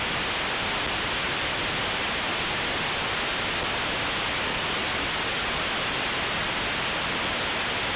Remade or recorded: recorded